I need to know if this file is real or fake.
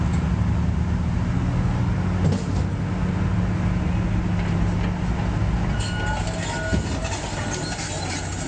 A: real